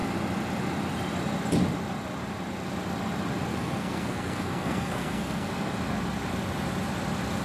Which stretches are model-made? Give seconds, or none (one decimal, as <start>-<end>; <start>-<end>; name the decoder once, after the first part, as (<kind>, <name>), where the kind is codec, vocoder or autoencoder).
3.5-5.5 (codec, SNAC)